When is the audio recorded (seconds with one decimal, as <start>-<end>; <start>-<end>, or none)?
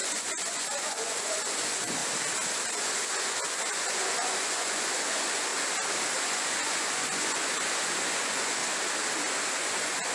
2.0-2.7; 5.5-6.2; 8.6-9.6